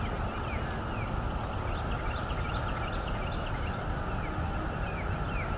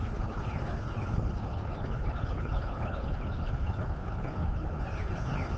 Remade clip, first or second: second